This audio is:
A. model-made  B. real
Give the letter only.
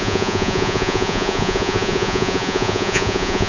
A